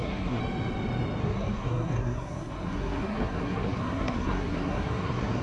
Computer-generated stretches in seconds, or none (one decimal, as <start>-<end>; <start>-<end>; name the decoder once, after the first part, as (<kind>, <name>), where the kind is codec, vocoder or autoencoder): 0.0-0.4 (codec, SNAC); 1.2-5.4